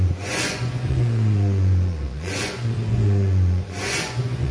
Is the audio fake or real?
fake